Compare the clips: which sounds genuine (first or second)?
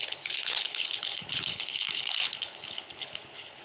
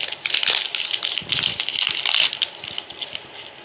second